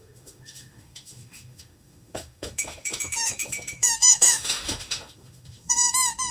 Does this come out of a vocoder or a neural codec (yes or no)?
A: yes